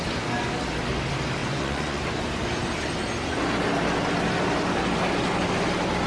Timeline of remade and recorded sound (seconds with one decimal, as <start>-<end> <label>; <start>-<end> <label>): 0.0-1.4 recorded; 1.4-2.0 remade; 2.0-6.1 recorded